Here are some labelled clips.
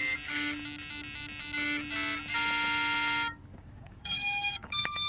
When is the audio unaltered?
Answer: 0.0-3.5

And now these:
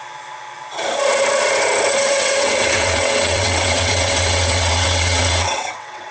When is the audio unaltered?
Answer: 0.0-2.0

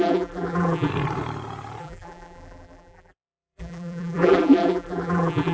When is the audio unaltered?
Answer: 0.9-1.8

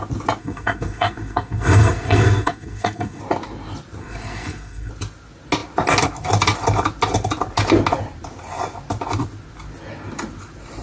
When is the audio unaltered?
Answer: 0.0-0.4; 3.2-4.0; 4.9-10.8

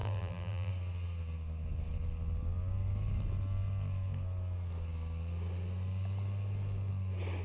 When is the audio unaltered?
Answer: 0.7-7.4

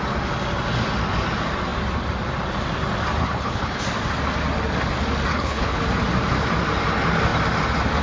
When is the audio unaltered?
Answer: 0.0-3.2; 3.8-5.3; 5.8-8.0

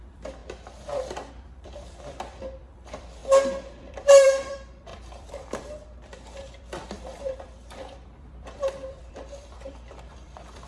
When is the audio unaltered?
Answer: 0.4-1.3; 3.2-3.8

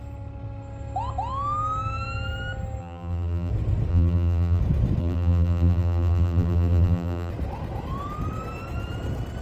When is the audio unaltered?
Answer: 0.0-2.8; 3.5-3.9; 4.6-5.0; 7.3-9.4